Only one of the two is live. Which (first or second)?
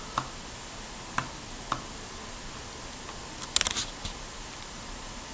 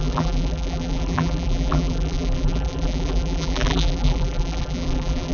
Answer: first